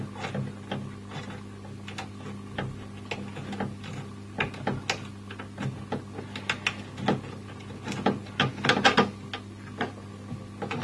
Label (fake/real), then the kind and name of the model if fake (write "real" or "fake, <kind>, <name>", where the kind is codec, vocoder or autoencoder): real